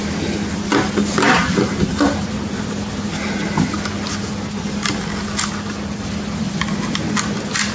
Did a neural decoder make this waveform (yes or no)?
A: no